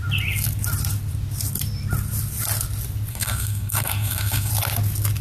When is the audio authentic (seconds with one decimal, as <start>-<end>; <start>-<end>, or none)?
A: 0.0-3.1; 4.5-5.2